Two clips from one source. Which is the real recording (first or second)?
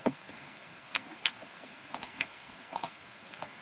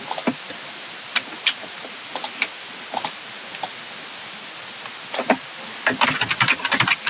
second